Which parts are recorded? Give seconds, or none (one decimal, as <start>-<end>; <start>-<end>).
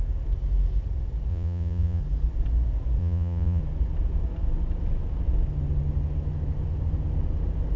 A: 0.0-1.3; 2.0-3.0; 3.6-7.8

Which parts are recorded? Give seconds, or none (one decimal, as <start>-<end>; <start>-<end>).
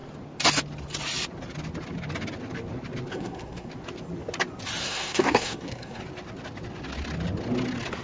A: 0.0-3.1; 3.7-4.8; 6.0-8.0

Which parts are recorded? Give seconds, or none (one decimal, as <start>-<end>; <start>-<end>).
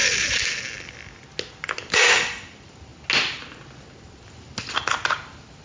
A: 0.0-5.6